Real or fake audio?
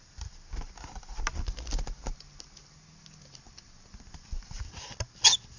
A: real